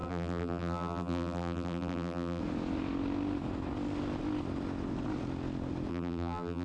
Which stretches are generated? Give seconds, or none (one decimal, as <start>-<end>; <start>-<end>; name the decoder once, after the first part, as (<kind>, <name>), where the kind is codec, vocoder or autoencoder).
0.0-2.4 (vocoder, BigVGAN v2); 5.9-6.6